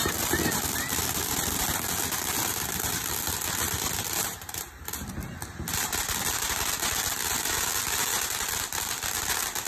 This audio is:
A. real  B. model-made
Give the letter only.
A